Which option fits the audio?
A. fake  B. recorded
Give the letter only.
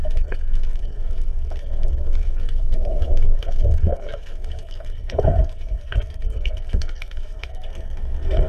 A